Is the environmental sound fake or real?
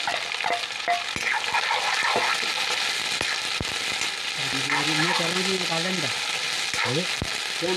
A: real